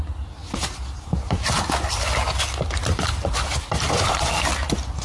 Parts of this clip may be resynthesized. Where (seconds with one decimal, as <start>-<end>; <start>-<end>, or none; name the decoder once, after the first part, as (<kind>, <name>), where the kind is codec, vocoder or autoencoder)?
0.4-1.9 (vocoder, BigVGAN v2); 2.8-4.3